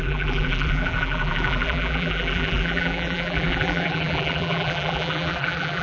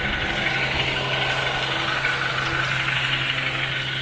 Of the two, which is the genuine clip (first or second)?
second